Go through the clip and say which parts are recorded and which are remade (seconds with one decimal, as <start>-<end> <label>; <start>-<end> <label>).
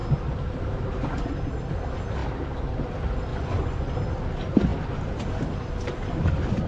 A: 0.0-3.3 recorded; 3.3-3.9 remade; 3.9-6.7 recorded